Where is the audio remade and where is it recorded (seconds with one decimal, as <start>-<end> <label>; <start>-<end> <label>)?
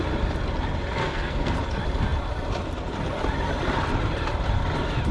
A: 0.0-1.0 recorded; 1.0-1.6 remade; 1.6-5.1 recorded